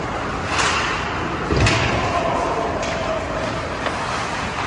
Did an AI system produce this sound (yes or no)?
no